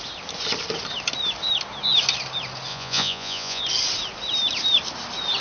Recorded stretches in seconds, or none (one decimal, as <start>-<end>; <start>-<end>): 0.0-2.7; 3.6-5.4